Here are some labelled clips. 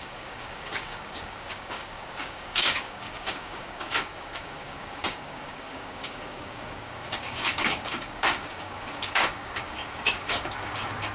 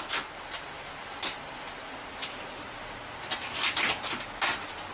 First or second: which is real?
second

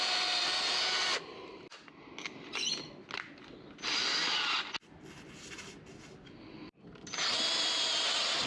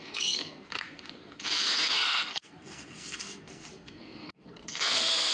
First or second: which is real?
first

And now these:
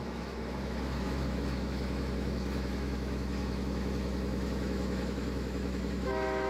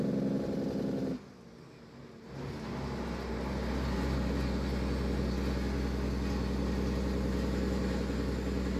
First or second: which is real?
second